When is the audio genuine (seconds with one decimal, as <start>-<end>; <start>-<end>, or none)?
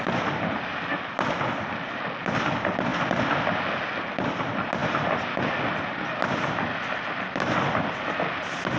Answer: 0.0-8.8